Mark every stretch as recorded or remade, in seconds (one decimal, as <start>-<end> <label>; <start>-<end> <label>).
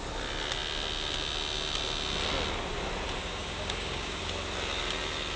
0.0-3.2 recorded; 3.2-4.2 remade; 4.2-5.4 recorded